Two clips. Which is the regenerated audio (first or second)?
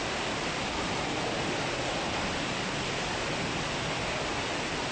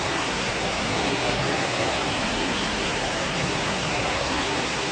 second